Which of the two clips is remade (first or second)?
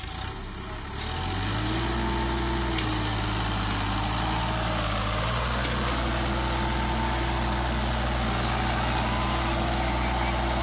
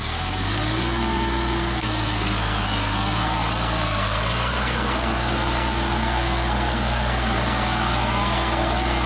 second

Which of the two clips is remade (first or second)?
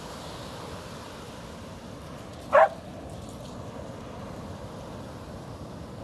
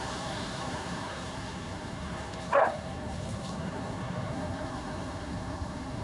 second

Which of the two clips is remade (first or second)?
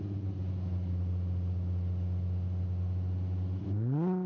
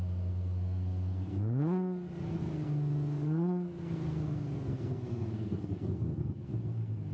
second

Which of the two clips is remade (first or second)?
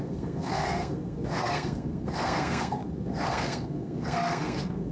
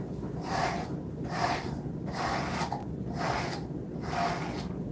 first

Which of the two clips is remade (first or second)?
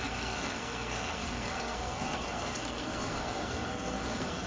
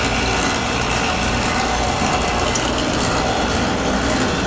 first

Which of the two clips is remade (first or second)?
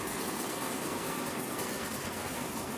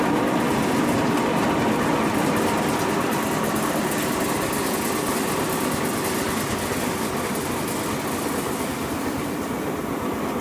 first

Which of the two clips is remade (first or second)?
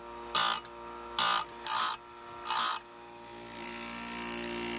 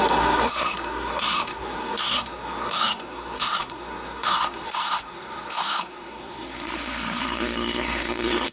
second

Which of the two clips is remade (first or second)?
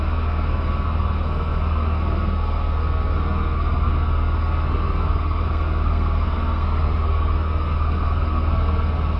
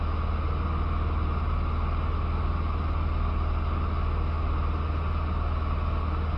first